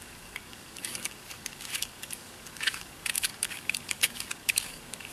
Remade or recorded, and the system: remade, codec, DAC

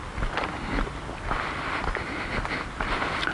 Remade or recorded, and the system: recorded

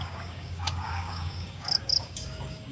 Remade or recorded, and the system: remade, codec, DAC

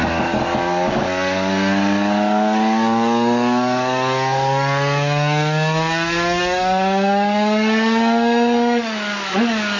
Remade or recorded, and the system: remade, codec, DAC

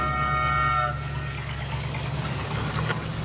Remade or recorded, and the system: remade, codec, DAC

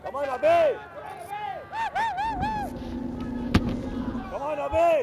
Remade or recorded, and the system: recorded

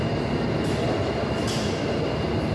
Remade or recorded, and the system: recorded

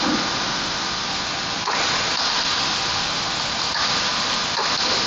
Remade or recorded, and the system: recorded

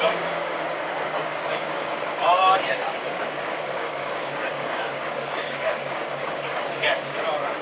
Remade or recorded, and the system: remade, codec, DAC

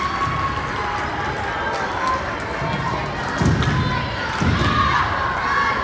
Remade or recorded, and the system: recorded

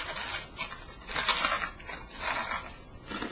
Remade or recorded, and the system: recorded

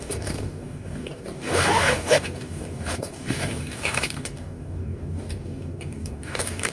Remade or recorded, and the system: remade, codec, DAC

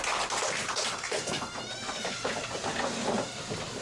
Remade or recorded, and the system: recorded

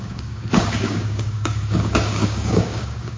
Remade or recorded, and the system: remade, codec, DAC